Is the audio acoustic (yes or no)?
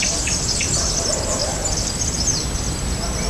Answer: yes